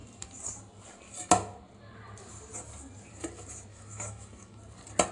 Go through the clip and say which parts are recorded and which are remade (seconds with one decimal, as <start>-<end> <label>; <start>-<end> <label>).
0.0-3.7 recorded; 3.7-4.6 remade; 4.6-5.1 recorded